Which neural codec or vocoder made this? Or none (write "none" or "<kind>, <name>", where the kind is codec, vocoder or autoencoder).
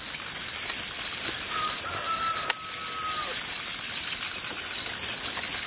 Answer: none